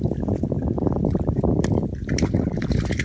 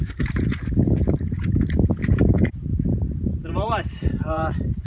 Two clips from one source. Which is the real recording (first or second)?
first